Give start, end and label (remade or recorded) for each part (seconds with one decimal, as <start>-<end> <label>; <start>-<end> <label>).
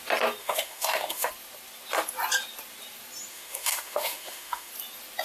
0.0-0.4 recorded; 0.4-1.3 remade; 1.3-3.3 recorded; 3.3-4.7 remade; 4.7-5.2 recorded